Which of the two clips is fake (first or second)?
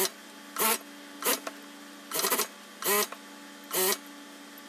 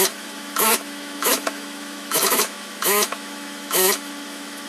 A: second